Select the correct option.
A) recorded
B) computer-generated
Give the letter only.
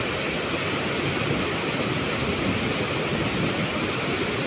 A